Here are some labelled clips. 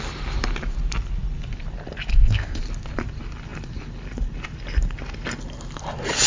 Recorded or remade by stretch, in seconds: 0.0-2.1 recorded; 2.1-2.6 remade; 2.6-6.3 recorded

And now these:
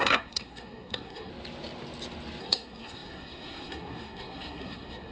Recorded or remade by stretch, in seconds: 0.0-1.3 remade; 1.3-2.4 recorded; 2.4-5.1 remade

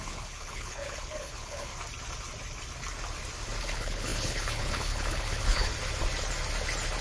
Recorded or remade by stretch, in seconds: 0.0-1.7 remade; 1.7-3.6 recorded; 3.6-5.7 remade; 5.7-7.0 recorded

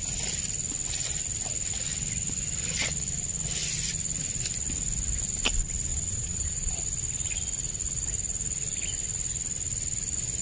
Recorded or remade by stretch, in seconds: 0.0-5.9 recorded; 5.9-6.8 remade; 6.8-10.4 recorded

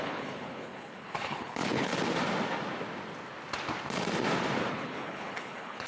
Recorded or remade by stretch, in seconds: 0.0-1.9 remade; 1.9-4.7 recorded; 4.7-5.9 remade

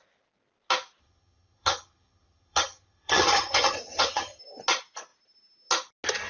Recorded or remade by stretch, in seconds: 0.0-1.0 recorded; 1.0-4.4 remade; 4.4-6.3 recorded

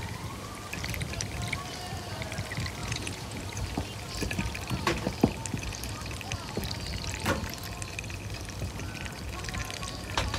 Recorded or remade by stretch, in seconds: 0.0-2.8 recorded; 2.8-3.4 remade; 3.4-10.4 recorded

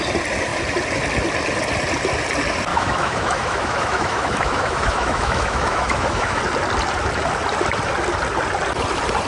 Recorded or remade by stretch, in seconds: 0.0-2.7 recorded; 2.7-6.4 remade; 6.4-9.3 recorded